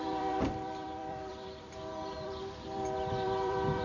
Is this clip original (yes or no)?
no